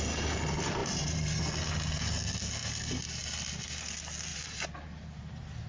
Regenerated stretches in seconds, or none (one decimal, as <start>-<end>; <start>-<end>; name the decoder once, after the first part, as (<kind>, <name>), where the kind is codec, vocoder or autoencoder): 0.8-1.4 (vocoder, BigVGAN v2); 4.3-5.7

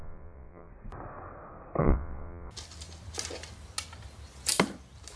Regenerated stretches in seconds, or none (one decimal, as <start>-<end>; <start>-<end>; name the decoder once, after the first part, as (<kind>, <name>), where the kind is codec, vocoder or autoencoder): 0.0-0.7 (vocoder, WaveNeXt); 1.8-2.5

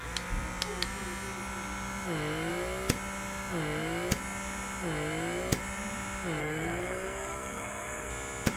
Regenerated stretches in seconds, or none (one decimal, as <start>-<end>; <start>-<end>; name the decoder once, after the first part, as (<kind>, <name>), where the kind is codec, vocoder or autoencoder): 6.4-8.1 (codec, SNAC)

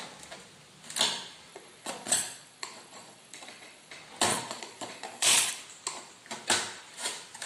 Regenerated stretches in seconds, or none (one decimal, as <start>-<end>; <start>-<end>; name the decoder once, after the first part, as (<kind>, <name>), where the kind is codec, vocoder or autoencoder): 1.5-3.9 (vocoder, Vocos); 4.3-5.5

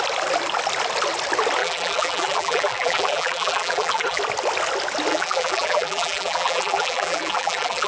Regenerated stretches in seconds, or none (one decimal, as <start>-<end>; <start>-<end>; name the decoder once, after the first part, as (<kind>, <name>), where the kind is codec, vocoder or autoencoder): 1.6-4.2 (vocoder, BigVGAN v2); 5.1-7.9

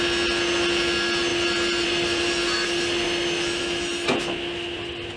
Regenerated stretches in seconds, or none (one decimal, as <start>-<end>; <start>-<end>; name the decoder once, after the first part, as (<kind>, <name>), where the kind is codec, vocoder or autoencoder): none

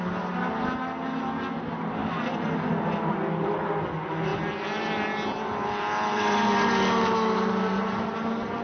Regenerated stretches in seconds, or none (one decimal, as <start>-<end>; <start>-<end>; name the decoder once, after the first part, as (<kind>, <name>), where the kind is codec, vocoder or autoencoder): none

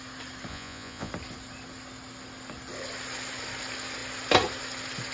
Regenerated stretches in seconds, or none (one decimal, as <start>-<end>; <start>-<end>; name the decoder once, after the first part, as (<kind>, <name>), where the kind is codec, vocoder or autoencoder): 0.5-1.1 (vocoder, Vocos)